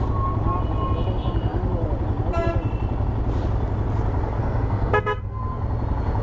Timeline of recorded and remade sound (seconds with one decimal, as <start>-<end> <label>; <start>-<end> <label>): 0.0-4.4 recorded; 4.4-5.4 remade; 5.4-6.2 recorded